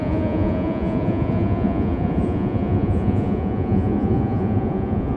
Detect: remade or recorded remade